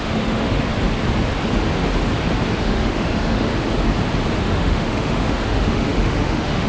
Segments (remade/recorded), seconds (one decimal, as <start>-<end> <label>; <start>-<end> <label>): 0.0-0.7 remade; 0.7-2.6 recorded; 2.6-3.5 remade; 3.5-4.4 recorded; 4.4-6.7 remade